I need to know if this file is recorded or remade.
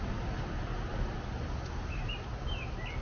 recorded